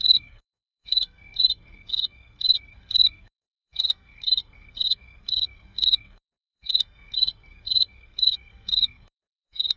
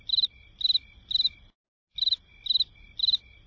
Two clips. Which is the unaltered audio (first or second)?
second